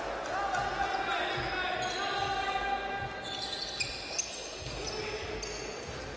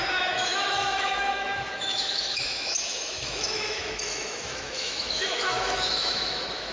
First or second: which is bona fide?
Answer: first